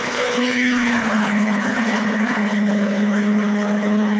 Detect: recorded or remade remade